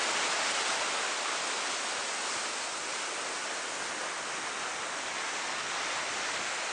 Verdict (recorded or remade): recorded